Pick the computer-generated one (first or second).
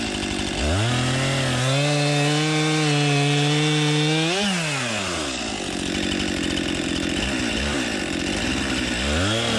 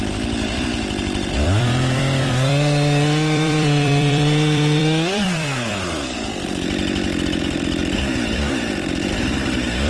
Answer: second